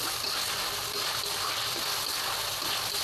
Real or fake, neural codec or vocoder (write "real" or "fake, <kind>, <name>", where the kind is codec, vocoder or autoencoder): real